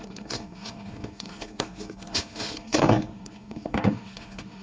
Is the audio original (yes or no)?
no